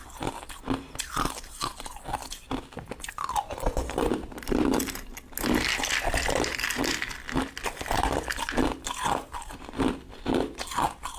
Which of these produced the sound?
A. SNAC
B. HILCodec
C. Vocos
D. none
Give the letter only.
D